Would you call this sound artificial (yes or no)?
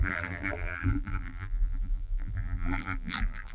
yes